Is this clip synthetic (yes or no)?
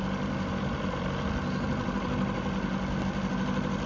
no